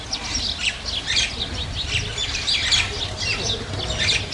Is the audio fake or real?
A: real